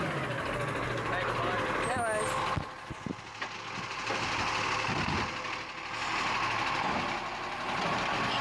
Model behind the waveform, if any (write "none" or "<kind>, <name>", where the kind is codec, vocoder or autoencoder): none